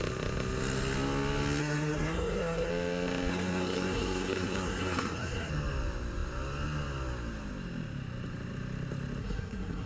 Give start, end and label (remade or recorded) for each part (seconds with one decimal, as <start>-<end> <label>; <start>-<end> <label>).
0.0-1.6 recorded; 1.6-2.7 remade; 2.7-3.3 recorded; 3.3-5.5 remade; 5.5-9.2 recorded; 9.2-9.9 remade